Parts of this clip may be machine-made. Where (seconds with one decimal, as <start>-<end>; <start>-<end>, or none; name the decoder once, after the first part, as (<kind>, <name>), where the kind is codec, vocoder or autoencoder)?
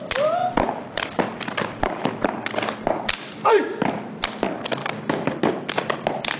4.8-5.4 (codec, DAC)